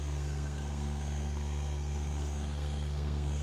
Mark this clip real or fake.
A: fake